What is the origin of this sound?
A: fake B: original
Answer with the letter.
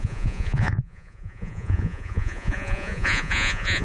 A